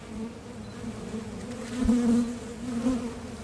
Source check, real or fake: real